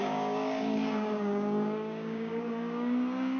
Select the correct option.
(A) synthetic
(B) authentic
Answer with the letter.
A